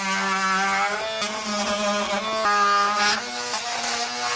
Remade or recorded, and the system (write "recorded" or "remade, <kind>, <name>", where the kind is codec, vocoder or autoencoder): recorded